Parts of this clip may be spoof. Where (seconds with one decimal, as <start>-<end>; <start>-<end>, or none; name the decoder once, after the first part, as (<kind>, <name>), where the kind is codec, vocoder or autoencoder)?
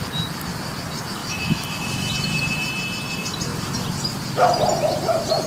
1.2-2.1 (autoencoder, DAC-VAE)